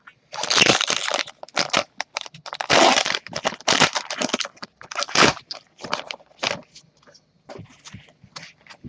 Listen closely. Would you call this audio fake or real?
real